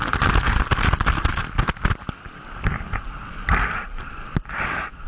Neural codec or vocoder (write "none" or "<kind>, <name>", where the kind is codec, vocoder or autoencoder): none